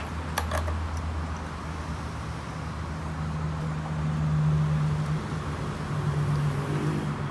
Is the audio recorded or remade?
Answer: recorded